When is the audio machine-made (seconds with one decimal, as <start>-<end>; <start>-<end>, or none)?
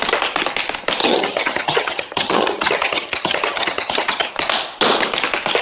1.0-4.3